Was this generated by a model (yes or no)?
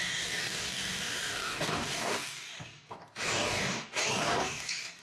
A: yes